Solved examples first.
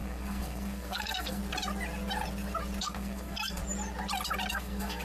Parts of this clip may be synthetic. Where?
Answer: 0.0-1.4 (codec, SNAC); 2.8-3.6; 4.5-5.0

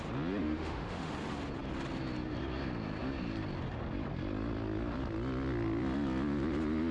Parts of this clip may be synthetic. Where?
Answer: 0.4-1.1 (autoencoder, DAC-VAE)

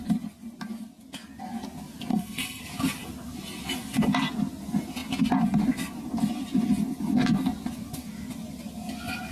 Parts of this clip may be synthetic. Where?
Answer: 2.1-2.6 (codec, SNAC)

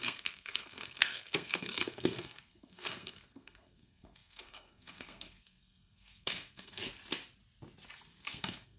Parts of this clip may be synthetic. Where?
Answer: 0.0-6.8 (codec, SNAC); 8.2-8.8

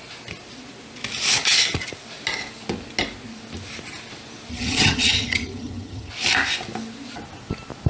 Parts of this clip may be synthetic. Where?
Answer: 4.5-6.1 (vocoder, HiFi-GAN)

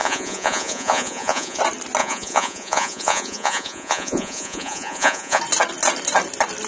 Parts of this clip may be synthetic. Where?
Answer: 0.0-1.6 (vocoder, Vocos); 2.0-5.4